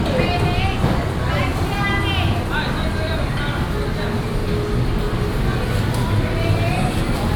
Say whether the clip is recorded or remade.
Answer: recorded